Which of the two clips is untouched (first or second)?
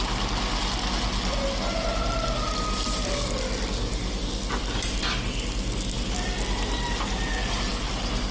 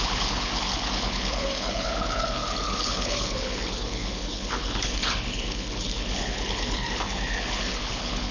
first